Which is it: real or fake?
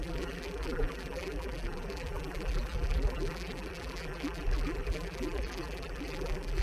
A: fake